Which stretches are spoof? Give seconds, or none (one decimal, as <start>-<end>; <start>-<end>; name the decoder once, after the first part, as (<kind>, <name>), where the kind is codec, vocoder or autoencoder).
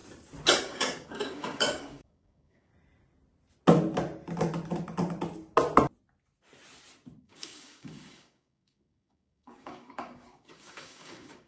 0.6-2.7 (codec, DAC); 7.2-11.5